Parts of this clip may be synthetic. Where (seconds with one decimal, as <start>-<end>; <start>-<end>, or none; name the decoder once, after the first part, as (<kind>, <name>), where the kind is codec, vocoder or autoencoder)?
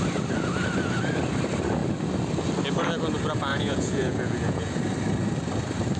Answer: 3.5-4.7 (vocoder, Vocos)